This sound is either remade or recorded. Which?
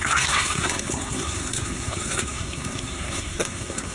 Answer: remade